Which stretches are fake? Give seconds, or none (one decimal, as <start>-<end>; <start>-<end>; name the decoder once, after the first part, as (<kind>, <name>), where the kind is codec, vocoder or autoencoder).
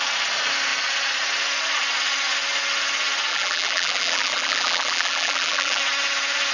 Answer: 3.3-5.8 (vocoder, BigVGAN v2)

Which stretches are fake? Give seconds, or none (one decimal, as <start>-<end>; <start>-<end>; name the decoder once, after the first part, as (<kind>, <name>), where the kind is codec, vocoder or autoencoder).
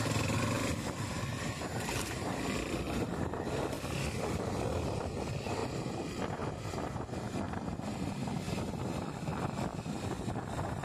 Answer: 1.3-3.1 (vocoder, BigVGAN v2); 5.6-8.0